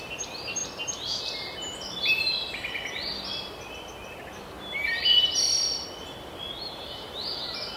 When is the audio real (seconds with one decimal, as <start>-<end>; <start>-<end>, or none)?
0.6-1.2; 3.1-6.6